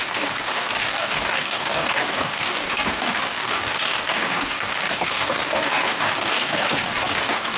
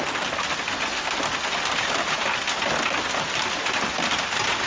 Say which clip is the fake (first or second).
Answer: first